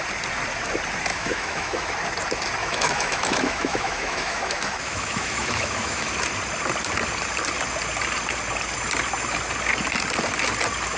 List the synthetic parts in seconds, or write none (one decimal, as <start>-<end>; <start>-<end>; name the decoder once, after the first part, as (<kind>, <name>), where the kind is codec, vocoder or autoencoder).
1.1-1.9 (autoencoder, DAC-VAE); 2.6-6.1